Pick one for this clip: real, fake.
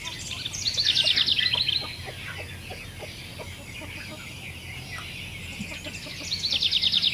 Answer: real